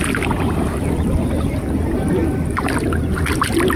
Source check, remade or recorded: recorded